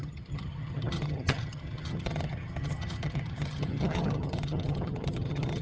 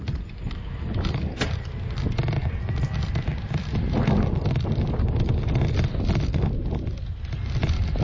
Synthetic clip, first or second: first